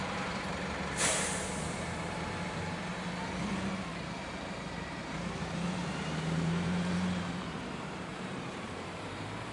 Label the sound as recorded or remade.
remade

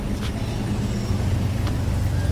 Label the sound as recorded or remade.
recorded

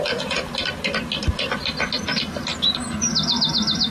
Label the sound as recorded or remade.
recorded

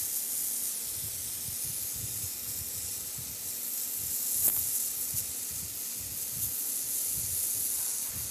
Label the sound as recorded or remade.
recorded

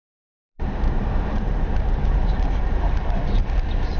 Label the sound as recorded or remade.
remade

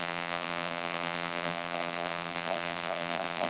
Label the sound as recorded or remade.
remade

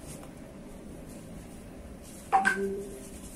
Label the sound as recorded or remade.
remade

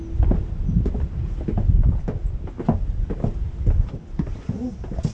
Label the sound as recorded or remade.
recorded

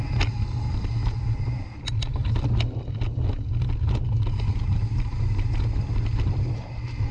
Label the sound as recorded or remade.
recorded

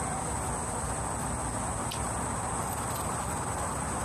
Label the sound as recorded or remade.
recorded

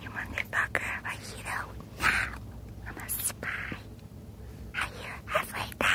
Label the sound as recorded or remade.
recorded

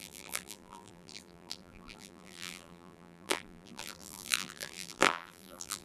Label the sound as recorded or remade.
remade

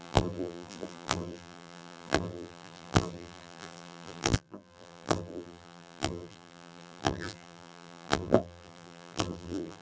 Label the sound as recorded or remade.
remade